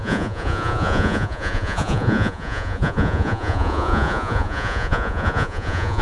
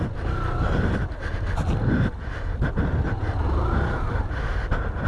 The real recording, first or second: second